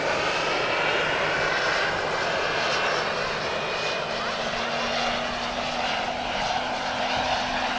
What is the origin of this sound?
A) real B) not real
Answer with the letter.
A